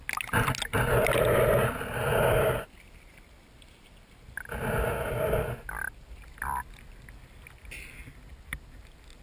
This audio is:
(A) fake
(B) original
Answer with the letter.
B